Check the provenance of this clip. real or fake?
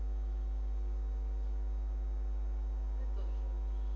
real